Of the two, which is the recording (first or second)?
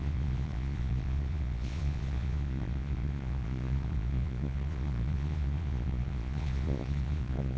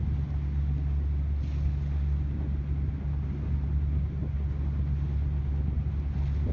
second